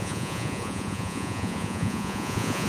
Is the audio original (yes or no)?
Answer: no